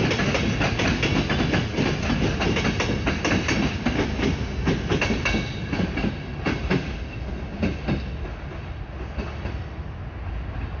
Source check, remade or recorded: recorded